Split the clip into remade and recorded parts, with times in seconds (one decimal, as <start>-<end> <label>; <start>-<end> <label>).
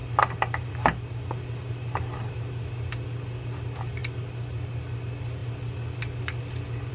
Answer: 0.0-6.9 recorded